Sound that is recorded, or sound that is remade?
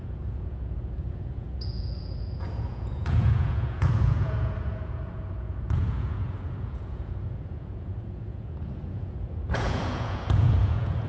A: remade